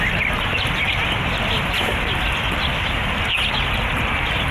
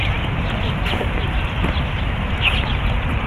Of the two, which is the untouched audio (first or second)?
first